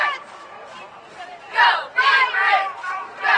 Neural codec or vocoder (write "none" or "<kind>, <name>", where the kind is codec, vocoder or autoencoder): vocoder, BigVGAN v2